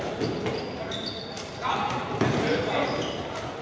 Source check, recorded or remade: recorded